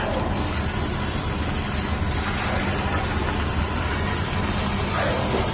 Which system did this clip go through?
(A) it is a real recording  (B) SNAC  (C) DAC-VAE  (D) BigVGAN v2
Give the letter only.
A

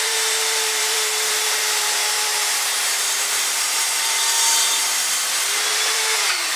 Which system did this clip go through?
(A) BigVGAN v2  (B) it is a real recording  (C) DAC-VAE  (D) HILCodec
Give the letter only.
A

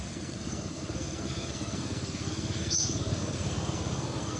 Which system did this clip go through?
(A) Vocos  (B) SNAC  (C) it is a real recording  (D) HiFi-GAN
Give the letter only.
B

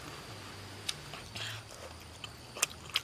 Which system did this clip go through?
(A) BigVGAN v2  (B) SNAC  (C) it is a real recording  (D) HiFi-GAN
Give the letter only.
C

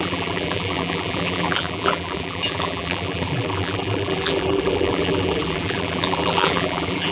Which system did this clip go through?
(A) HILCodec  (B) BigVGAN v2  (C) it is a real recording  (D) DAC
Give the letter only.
B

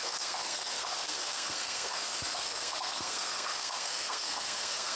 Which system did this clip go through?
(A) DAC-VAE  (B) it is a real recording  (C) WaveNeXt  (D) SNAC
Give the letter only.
D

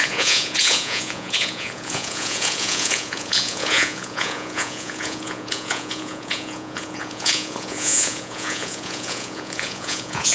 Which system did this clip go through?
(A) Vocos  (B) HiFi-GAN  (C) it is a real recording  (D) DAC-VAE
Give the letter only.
A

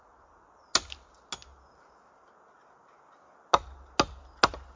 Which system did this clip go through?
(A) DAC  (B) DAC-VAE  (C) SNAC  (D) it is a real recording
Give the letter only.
D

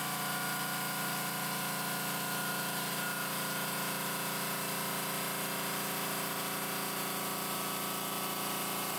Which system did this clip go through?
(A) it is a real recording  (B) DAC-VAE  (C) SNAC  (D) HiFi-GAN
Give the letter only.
A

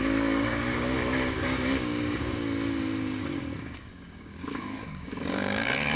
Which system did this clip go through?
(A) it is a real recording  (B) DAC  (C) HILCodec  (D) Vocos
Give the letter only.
B